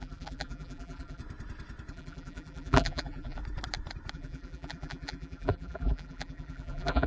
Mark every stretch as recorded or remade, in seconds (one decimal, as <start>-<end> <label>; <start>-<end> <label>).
0.0-1.2 remade; 1.2-1.9 recorded; 1.9-3.4 remade; 3.4-4.1 recorded; 4.1-7.1 remade